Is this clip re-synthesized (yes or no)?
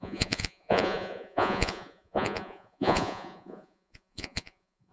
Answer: yes